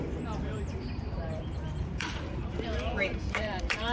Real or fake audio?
fake